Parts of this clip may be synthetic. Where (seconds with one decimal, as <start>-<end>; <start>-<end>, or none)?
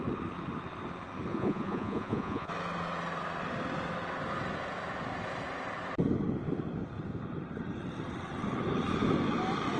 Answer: 1.3-2.5